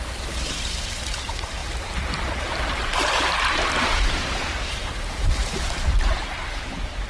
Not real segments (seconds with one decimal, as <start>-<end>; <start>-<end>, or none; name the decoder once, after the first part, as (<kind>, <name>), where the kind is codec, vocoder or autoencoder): 0.0-7.1 (vocoder, BigVGAN v2)